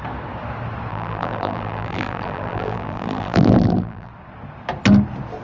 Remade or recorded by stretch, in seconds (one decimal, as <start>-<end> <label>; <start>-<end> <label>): 0.0-0.9 recorded; 0.9-4.1 remade; 4.1-5.4 recorded